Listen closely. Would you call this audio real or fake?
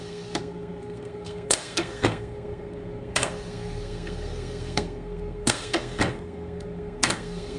fake